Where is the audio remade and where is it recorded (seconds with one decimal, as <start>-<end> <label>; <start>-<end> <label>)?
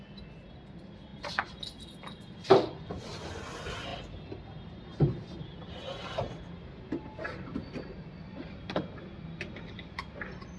0.0-10.6 recorded